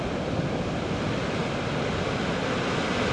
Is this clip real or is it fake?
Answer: real